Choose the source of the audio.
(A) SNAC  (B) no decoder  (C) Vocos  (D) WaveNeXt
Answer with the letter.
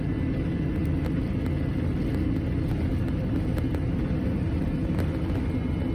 B